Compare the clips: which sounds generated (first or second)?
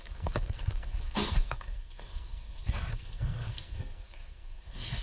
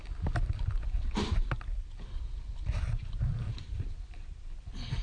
first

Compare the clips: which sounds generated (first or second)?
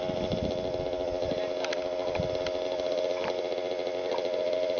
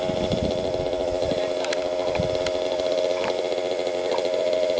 second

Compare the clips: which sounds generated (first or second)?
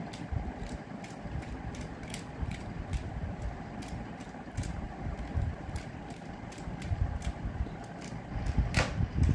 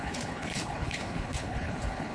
second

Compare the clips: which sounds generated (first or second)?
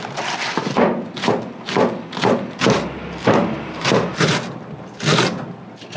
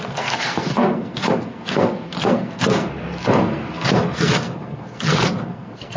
second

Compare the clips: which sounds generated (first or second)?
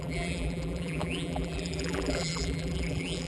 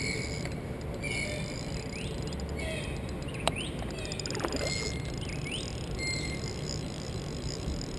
first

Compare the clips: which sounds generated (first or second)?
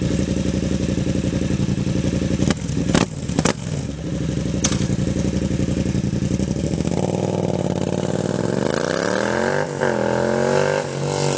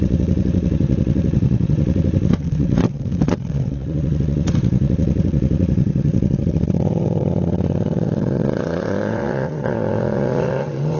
second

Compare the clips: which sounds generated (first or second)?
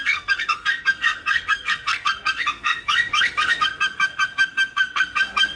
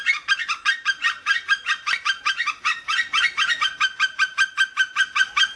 first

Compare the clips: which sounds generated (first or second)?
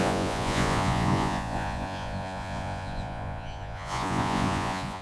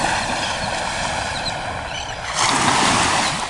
first